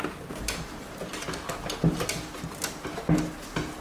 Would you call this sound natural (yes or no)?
yes